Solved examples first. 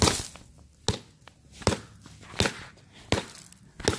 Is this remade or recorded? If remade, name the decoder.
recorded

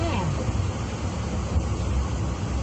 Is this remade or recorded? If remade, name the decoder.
recorded